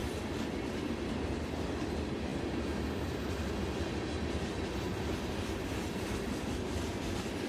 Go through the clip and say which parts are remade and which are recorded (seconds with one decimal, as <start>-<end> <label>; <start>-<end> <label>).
0.0-7.5 recorded